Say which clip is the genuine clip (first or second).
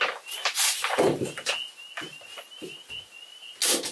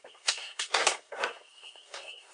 first